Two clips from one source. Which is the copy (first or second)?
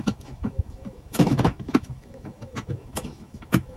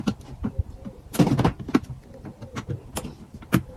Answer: first